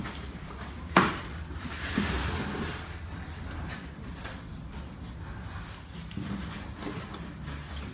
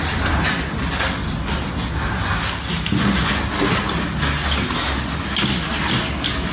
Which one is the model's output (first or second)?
first